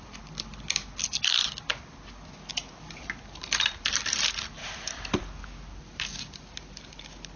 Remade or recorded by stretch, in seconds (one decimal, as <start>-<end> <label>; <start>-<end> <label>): 0.0-7.4 recorded